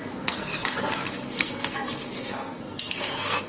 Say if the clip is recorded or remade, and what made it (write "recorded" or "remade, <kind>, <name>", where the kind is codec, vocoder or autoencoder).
remade, codec, SNAC